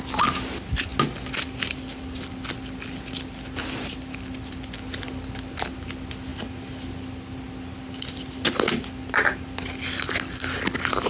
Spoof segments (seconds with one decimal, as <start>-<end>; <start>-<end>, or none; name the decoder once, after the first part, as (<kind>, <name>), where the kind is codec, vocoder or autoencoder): none